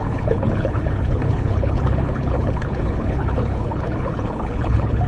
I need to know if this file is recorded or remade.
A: remade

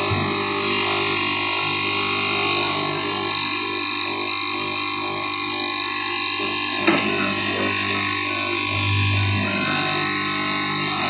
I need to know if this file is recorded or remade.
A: recorded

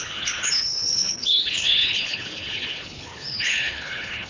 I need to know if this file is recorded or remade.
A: remade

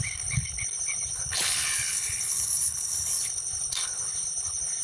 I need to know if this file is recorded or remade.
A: remade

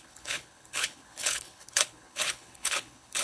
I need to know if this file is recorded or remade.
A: remade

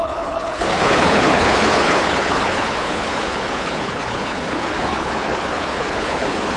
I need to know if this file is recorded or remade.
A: remade